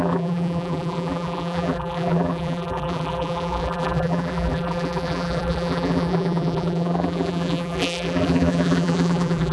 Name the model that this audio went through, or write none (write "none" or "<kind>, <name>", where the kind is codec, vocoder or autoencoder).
vocoder, BigVGAN v2